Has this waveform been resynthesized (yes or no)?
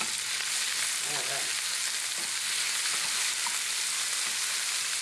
no